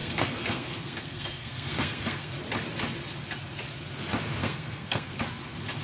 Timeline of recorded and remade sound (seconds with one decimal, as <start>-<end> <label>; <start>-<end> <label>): 0.0-2.3 remade; 2.3-4.4 recorded; 4.4-5.2 remade; 5.2-5.8 recorded